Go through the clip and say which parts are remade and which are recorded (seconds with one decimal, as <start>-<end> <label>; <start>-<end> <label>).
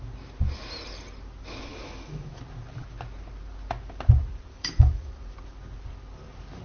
0.0-1.7 recorded; 1.7-2.4 remade; 2.4-4.5 recorded; 4.5-5.1 remade; 5.1-6.6 recorded